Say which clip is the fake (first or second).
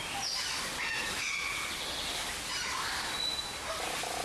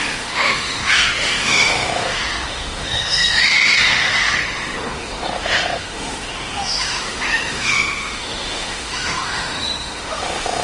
second